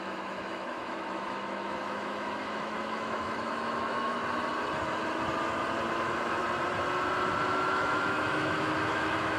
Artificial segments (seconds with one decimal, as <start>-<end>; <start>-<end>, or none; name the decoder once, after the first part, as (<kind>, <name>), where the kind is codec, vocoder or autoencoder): 0.0-4.2 (autoencoder, DAC-VAE); 5.9-6.4; 7.5-9.4